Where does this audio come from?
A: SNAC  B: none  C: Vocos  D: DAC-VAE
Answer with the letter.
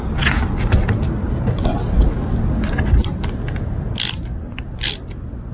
B